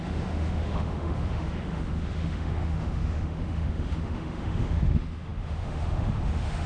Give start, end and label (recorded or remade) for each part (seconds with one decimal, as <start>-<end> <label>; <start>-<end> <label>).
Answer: 0.0-6.7 remade